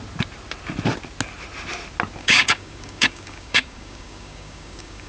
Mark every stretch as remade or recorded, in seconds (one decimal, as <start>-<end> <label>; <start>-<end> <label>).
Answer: 0.0-2.2 recorded; 2.2-5.1 remade